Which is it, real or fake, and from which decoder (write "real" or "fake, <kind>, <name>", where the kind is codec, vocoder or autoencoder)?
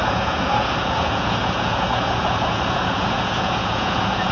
fake, vocoder, Vocos